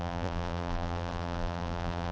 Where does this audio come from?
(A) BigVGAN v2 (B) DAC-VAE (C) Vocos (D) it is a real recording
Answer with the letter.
A